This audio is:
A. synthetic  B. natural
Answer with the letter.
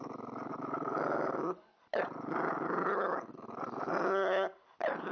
B